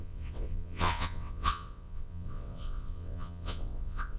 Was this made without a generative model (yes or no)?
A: no